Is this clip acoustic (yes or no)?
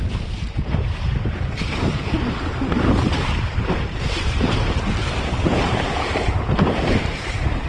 no